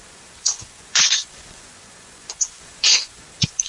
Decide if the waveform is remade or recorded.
remade